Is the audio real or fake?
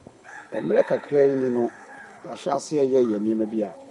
fake